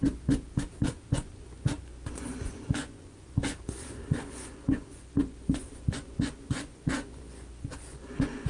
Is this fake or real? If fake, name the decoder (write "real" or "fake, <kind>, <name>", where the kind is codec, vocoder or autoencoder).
fake, vocoder, Vocos